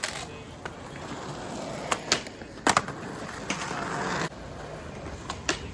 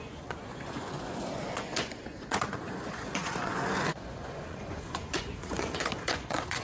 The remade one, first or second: second